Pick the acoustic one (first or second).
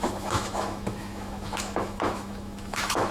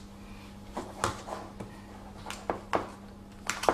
second